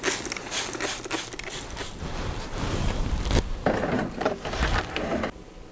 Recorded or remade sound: recorded